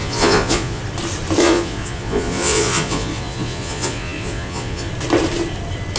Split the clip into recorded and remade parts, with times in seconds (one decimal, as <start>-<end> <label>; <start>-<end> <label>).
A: 0.0-0.8 remade; 0.8-1.4 recorded; 1.4-4.9 remade; 4.9-6.0 recorded